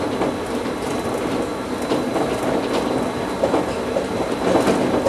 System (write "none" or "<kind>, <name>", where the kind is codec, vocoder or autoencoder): none